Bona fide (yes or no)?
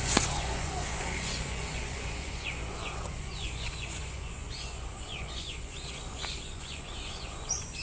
no